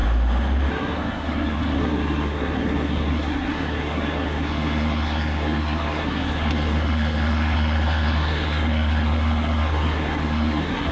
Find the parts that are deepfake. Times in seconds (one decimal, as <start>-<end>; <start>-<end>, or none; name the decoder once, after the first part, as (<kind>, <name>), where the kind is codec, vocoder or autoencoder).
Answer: 0.7-10.9 (codec, SNAC)